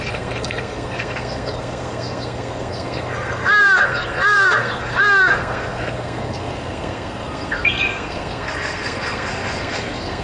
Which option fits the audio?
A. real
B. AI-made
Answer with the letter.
B